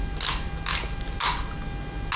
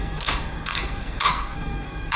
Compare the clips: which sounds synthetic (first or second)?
second